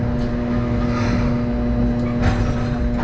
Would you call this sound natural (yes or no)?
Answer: yes